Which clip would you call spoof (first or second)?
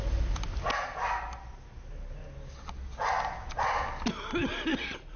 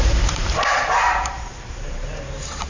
second